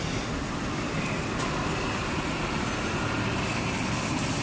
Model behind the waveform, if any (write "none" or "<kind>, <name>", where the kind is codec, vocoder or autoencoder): none